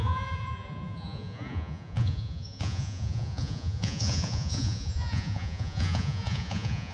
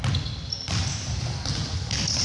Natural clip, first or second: second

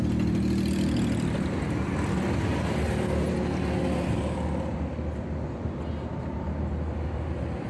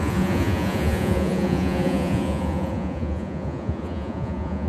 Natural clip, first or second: first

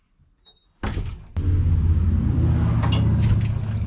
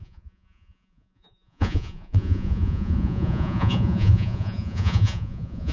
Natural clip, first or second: first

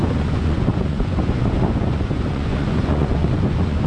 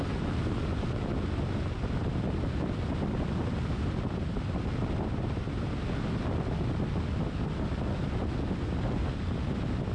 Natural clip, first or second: second